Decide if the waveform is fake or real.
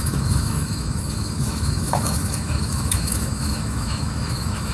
fake